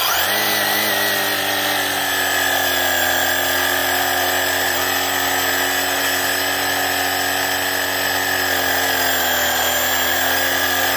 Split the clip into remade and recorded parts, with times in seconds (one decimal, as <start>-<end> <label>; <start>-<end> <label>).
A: 0.0-11.0 recorded